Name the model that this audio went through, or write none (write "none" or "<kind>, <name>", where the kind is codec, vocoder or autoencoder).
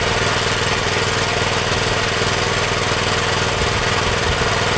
none